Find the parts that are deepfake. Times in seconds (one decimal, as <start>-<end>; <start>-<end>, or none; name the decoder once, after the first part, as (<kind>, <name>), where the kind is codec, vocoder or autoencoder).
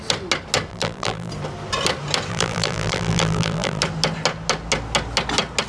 0.7-1.3 (vocoder, BigVGAN v2); 2.3-3.8